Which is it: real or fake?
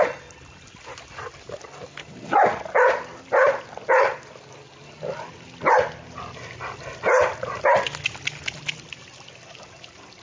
real